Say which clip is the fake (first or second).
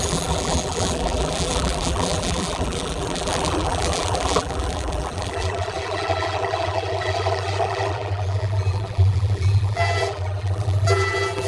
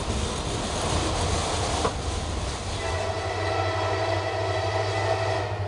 first